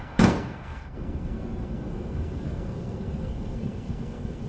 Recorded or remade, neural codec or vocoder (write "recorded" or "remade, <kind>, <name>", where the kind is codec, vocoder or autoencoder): remade, codec, SNAC